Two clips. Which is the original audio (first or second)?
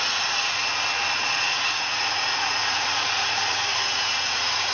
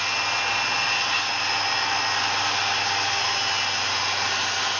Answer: second